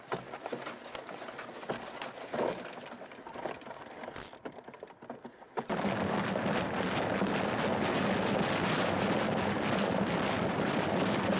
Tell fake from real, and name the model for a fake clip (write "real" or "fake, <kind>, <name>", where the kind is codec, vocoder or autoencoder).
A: real